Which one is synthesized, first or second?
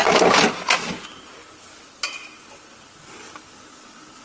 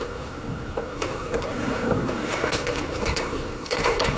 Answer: second